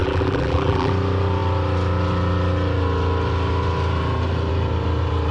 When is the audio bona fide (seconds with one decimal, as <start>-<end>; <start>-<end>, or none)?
0.9-5.3